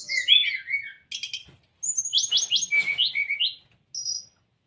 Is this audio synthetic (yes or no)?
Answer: no